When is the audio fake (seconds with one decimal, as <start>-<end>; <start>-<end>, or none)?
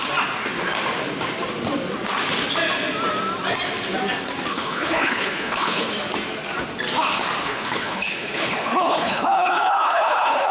4.5-5.9; 7.4-10.5